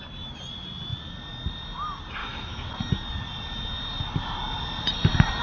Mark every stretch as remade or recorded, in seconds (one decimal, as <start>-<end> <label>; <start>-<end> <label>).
0.0-2.2 recorded; 2.2-2.7 remade; 2.7-5.4 recorded